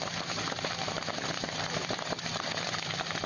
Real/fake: fake